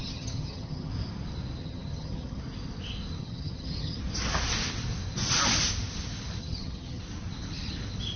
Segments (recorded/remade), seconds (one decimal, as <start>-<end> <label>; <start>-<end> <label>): 0.0-0.9 remade; 0.9-1.6 recorded; 1.6-2.4 remade; 2.4-3.2 recorded; 3.2-4.0 remade; 4.0-6.4 recorded; 6.4-7.0 remade; 7.0-8.2 recorded

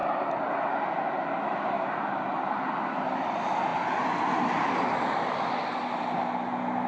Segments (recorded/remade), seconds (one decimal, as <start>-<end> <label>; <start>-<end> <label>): 0.0-6.9 recorded

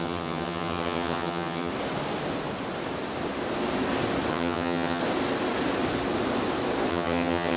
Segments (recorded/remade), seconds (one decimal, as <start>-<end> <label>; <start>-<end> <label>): 0.0-1.7 remade; 1.7-4.3 recorded; 4.3-5.0 remade; 5.0-6.9 recorded; 6.9-7.6 remade

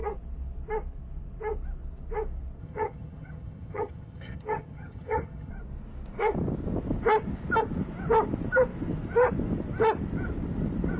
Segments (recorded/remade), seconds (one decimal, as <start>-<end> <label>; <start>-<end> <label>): 0.0-2.6 recorded; 2.6-5.5 remade; 5.5-11.0 recorded